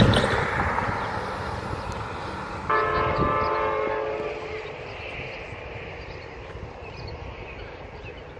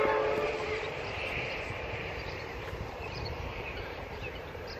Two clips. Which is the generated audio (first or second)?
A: second